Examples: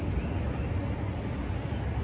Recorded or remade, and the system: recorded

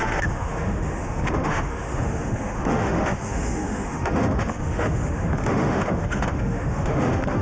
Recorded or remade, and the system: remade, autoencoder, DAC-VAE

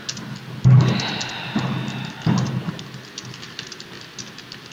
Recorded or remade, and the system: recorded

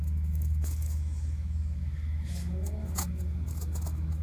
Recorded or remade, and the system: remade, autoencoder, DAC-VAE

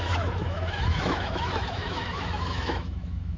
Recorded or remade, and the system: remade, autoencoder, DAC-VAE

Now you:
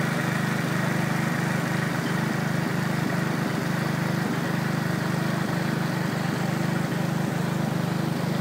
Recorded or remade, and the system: recorded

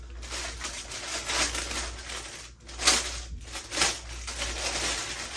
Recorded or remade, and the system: recorded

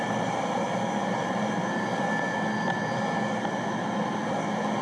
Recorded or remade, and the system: recorded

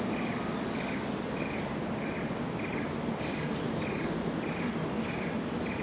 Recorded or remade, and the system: recorded